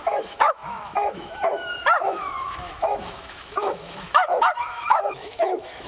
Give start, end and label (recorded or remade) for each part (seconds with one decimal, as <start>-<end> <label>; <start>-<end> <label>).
0.0-5.9 remade